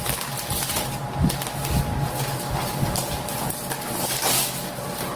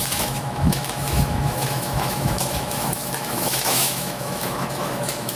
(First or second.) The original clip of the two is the first